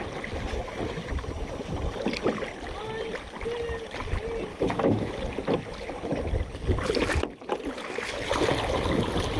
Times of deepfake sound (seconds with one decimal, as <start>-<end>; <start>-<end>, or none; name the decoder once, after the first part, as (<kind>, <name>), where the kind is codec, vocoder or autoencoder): 4.5-5.1 (autoencoder, DAC-VAE)